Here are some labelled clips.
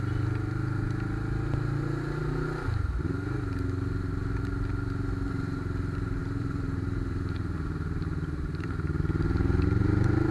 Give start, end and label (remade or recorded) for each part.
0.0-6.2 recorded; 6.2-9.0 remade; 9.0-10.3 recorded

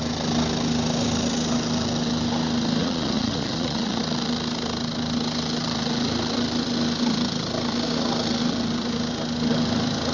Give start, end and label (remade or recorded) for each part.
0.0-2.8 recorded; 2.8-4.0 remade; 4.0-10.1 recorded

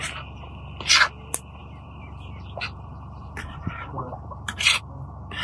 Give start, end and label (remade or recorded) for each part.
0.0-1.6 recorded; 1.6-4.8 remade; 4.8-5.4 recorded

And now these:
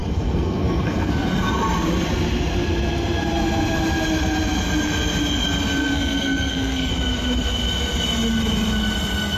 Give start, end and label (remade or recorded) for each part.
0.0-1.1 remade; 1.1-5.8 recorded; 5.8-6.9 remade; 6.9-9.4 recorded

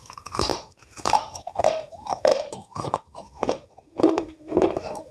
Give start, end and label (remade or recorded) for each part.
0.0-5.1 remade

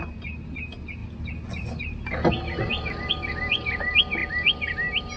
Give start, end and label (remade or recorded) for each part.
0.0-5.2 recorded